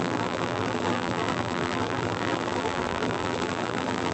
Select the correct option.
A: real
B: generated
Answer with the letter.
B